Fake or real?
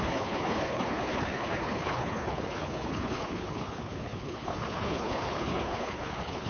fake